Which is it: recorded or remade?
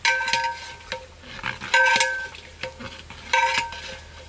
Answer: recorded